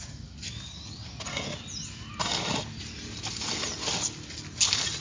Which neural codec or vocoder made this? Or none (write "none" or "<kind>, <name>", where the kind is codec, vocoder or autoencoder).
none